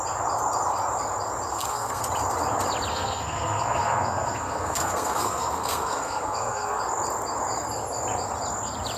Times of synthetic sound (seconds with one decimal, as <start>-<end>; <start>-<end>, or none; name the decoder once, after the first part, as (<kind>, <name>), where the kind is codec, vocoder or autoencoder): 1.5-2.0 (codec, SNAC); 2.9-6.8